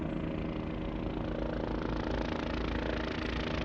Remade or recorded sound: recorded